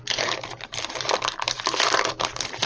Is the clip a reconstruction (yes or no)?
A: yes